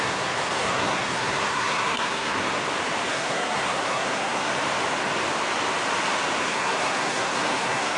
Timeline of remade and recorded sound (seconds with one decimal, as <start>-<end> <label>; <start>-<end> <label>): 0.0-2.5 remade; 2.5-3.1 recorded; 3.1-4.5 remade; 4.5-6.4 recorded; 6.4-8.0 remade